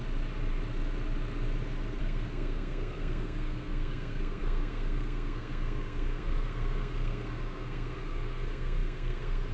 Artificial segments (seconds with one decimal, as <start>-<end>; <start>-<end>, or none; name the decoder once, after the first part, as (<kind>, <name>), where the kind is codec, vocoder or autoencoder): 2.0-9.5 (codec, SNAC)